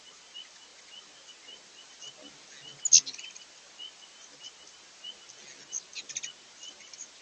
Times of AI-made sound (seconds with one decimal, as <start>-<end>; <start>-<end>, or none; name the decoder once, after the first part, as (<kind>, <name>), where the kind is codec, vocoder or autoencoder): none